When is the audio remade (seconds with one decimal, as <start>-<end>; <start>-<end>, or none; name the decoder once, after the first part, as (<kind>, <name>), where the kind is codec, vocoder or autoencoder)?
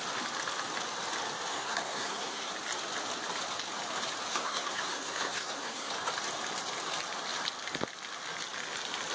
1.5-2.5 (codec, SNAC); 4.3-5.9